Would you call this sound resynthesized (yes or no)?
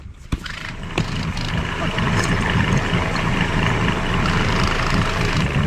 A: yes